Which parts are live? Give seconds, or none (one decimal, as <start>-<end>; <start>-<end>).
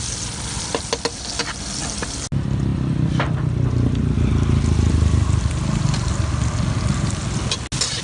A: 0.0-8.0